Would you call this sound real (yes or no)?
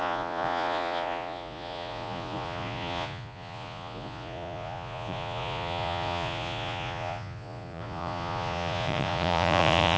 no